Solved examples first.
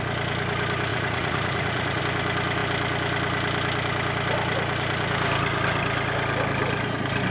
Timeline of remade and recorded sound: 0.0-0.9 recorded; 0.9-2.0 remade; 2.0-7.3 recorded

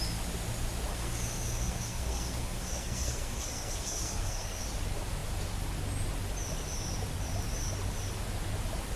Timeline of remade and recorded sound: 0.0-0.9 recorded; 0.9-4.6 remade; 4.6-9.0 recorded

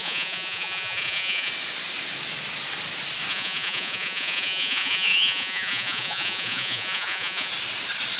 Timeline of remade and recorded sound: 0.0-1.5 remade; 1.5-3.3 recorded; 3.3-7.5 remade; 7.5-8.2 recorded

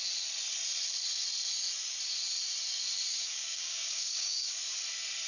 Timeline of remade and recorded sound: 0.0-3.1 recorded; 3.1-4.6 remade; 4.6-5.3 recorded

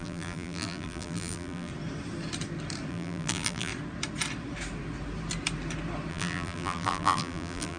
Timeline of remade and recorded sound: 0.0-1.7 remade; 1.7-2.9 recorded; 2.9-3.7 remade; 3.7-6.1 recorded; 6.1-7.8 remade